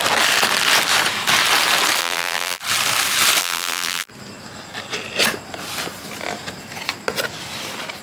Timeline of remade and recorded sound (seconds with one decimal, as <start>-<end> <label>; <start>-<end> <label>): 0.0-2.0 recorded; 2.0-2.6 remade; 2.6-3.4 recorded; 3.4-4.1 remade; 4.1-8.0 recorded